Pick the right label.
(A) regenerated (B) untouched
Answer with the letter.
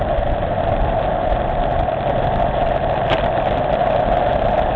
B